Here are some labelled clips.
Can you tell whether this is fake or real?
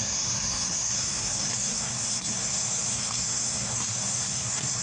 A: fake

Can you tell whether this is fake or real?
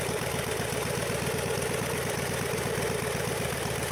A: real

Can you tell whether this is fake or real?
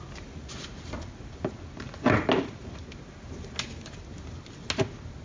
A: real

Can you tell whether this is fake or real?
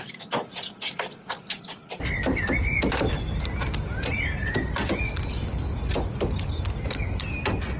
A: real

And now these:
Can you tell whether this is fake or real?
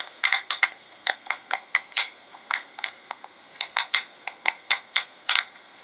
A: fake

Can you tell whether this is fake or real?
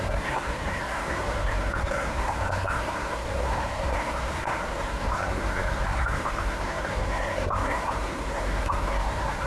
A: fake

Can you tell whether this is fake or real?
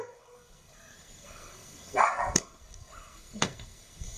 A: fake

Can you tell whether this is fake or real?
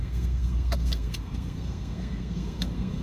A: fake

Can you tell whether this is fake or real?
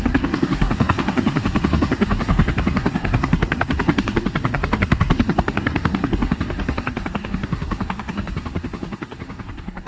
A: fake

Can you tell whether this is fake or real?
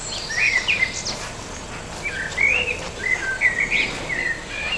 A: real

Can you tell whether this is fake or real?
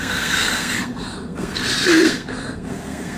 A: fake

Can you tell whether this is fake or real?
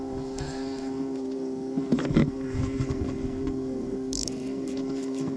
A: fake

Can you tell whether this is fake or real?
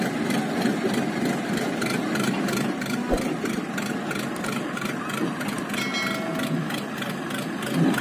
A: real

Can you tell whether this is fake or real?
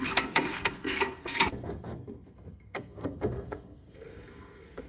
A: fake